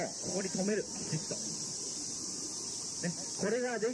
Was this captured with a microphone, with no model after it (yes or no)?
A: no